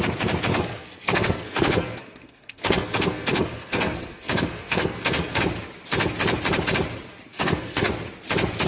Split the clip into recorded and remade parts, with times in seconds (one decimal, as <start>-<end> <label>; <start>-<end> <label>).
0.0-0.5 recorded; 0.5-5.4 remade; 5.4-7.3 recorded; 7.3-7.9 remade; 7.9-8.7 recorded